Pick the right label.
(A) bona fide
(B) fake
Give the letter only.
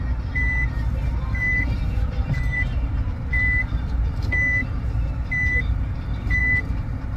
B